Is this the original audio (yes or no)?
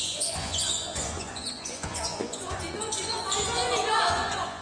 no